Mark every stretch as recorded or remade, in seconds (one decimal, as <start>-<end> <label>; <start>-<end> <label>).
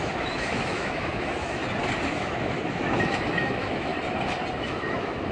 0.0-1.6 remade; 1.6-2.1 recorded; 2.1-3.9 remade; 3.9-4.5 recorded; 4.5-5.3 remade